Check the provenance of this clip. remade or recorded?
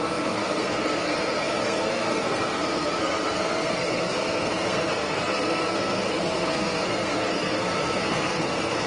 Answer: remade